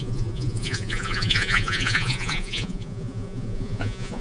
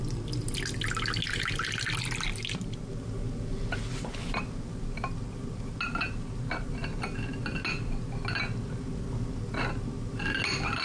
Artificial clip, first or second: first